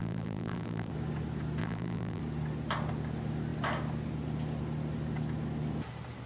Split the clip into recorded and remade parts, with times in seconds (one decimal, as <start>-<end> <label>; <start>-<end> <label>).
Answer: 0.0-0.9 remade; 0.9-1.6 recorded; 1.6-2.2 remade; 2.2-6.3 recorded